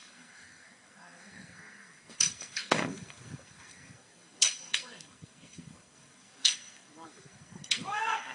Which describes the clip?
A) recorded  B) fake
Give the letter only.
B